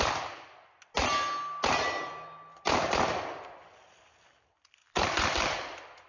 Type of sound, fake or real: real